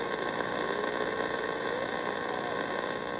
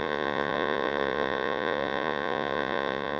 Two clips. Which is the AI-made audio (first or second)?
second